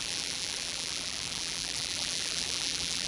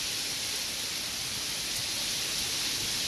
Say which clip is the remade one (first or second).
first